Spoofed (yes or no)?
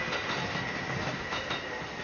no